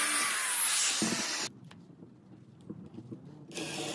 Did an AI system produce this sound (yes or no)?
no